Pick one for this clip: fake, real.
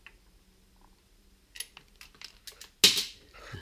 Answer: real